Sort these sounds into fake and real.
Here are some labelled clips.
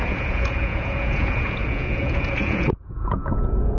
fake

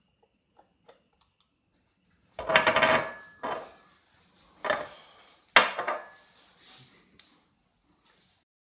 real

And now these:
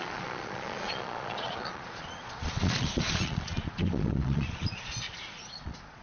fake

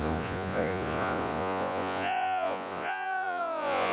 fake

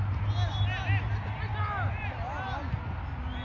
real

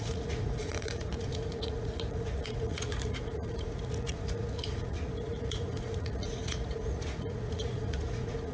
fake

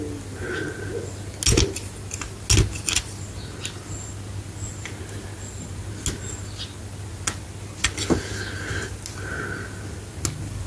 real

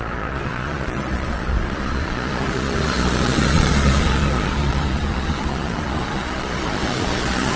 fake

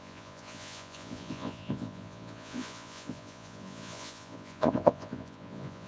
fake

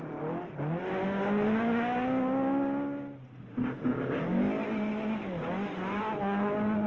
real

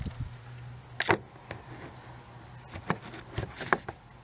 real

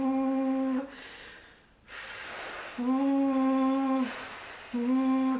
real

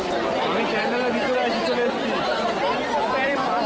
real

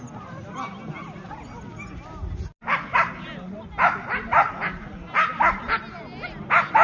real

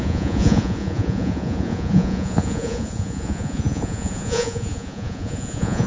fake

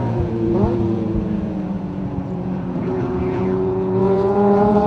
fake